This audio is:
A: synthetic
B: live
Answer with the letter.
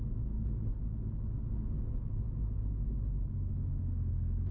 B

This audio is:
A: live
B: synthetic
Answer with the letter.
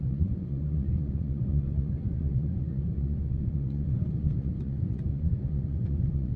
B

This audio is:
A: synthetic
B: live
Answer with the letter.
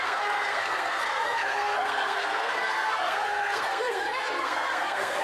A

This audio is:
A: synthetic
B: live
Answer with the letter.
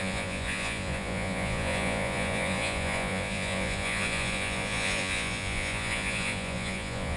A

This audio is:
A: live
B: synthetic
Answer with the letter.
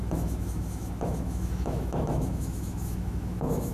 B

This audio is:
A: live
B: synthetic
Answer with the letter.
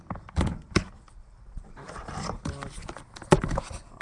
A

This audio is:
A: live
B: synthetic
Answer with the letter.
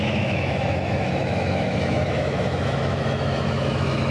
B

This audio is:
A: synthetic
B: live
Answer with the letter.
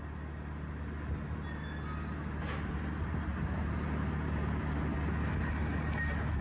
B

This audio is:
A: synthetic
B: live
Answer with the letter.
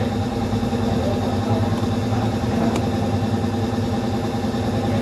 B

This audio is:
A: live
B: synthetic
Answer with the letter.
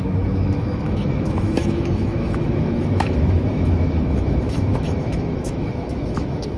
B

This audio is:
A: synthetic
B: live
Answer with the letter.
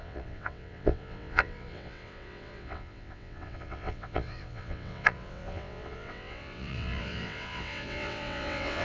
A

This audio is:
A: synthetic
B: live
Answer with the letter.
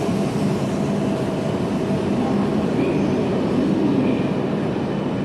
B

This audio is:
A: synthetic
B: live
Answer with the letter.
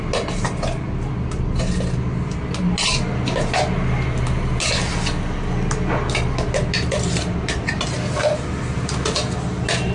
B